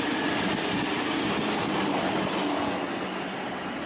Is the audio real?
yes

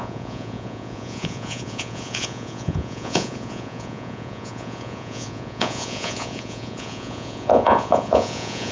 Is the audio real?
no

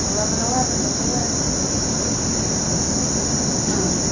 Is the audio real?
yes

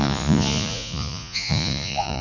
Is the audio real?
no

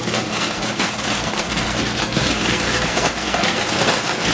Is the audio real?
no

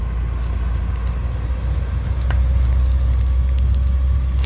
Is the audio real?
yes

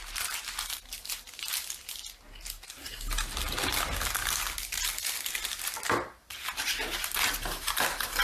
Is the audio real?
yes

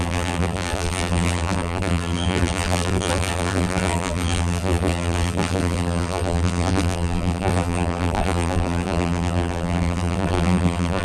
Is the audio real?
no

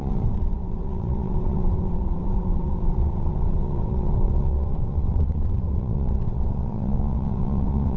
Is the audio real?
no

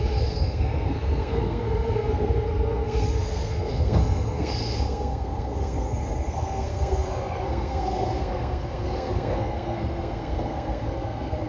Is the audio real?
no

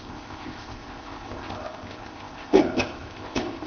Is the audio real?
no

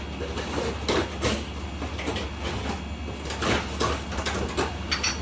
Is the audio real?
yes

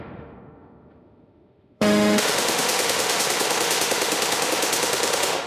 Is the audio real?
no